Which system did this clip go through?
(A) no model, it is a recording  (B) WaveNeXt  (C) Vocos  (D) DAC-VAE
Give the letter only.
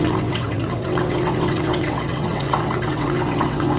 B